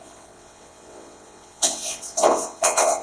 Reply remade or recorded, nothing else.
remade